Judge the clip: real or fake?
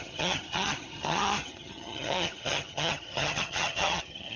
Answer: fake